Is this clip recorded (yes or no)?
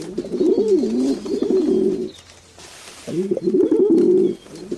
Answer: yes